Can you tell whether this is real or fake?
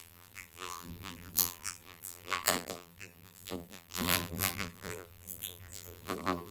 fake